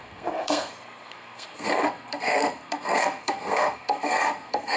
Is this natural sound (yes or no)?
no